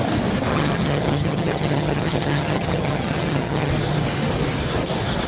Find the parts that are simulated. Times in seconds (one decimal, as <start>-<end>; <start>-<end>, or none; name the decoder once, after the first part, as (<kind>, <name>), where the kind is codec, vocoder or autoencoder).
0.5-3.7 (vocoder, HiFi-GAN)